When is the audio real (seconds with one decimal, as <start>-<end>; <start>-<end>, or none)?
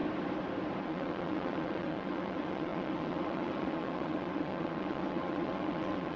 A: 0.0-0.8